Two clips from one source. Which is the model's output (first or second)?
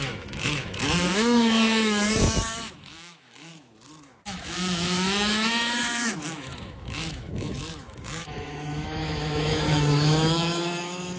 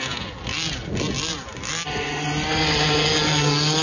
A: first